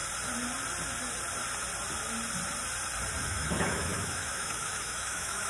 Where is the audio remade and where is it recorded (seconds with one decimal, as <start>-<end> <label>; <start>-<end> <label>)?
0.0-3.3 recorded; 3.3-5.5 remade